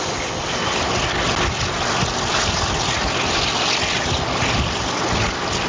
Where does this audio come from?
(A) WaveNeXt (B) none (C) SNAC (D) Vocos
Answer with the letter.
B